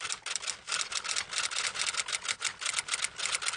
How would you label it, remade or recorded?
recorded